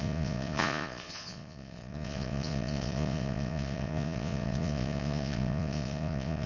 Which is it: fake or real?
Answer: fake